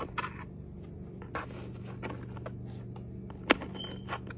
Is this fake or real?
real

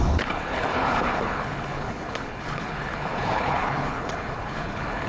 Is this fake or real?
fake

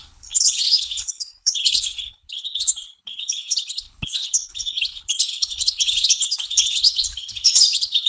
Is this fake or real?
fake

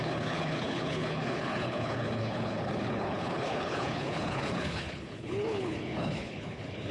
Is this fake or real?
fake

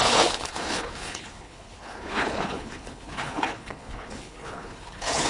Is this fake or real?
fake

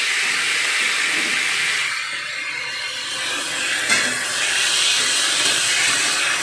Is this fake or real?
real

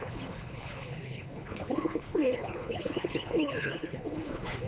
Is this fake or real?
fake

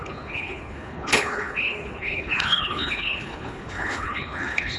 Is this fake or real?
fake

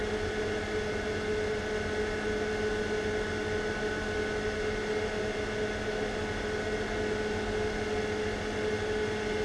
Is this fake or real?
real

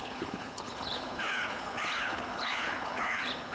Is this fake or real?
fake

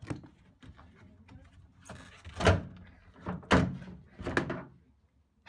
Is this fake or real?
real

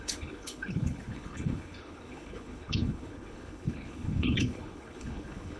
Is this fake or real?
fake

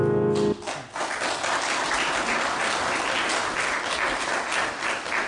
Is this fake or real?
real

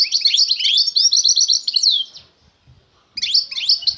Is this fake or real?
real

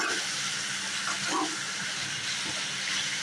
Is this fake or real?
real